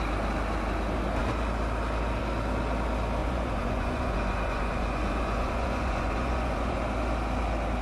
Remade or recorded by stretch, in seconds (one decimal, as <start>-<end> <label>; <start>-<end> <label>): 0.0-3.2 recorded; 3.2-6.8 remade; 6.8-7.8 recorded